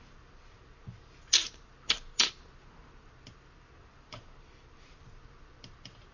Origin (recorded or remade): remade